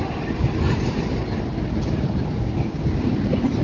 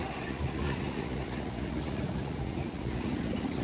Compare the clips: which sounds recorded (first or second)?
first